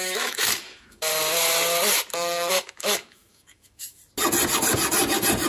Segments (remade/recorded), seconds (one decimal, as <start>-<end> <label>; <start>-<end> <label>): 0.0-1.1 remade; 1.1-2.5 recorded; 2.5-4.0 remade; 4.0-5.5 recorded